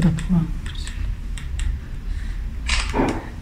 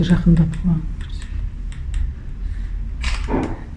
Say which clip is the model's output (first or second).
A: first